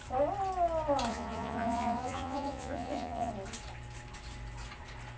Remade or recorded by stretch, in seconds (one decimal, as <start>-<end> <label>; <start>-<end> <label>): 0.0-1.1 recorded; 1.1-3.3 remade; 3.3-5.2 recorded